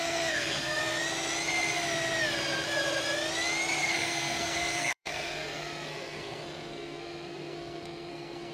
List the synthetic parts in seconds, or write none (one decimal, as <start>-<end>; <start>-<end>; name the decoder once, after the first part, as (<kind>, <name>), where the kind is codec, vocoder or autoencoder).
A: 0.0-0.8 (codec, SNAC); 3.8-8.5